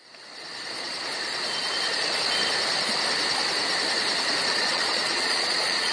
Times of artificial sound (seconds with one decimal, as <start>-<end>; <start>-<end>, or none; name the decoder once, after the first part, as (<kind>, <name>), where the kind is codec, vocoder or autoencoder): 4.5-5.9 (vocoder, Vocos)